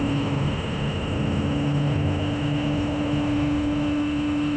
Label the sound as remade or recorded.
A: remade